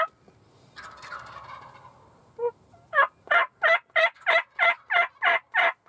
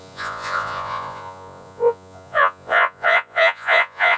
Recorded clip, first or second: first